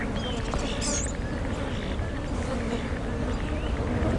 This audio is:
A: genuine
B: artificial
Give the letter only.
A